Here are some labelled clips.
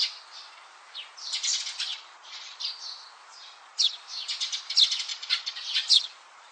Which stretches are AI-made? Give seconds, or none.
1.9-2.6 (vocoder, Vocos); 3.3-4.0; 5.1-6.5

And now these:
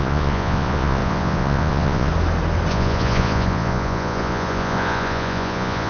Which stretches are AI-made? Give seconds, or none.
0.0-2.1 (vocoder, Vocos); 2.7-5.9

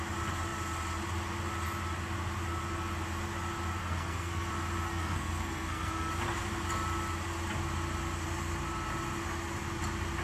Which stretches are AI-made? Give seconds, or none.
3.8-4.5 (codec, SNAC); 4.9-6.1

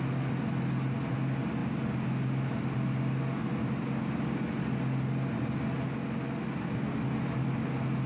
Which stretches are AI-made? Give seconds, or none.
none

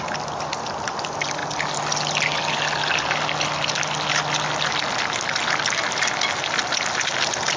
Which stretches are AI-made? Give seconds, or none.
none

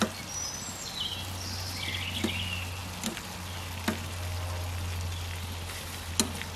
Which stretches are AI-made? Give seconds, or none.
none

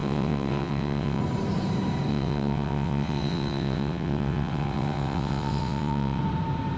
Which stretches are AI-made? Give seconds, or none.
0.0-1.2 (vocoder, WaveNeXt); 2.1-6.2

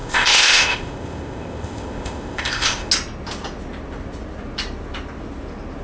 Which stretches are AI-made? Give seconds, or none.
0.0-2.9 (codec, ZipCodec)